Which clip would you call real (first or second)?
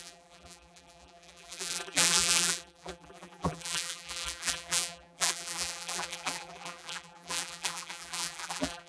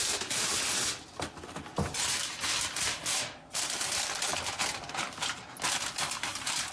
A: second